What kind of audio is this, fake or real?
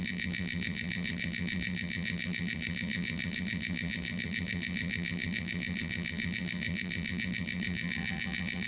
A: fake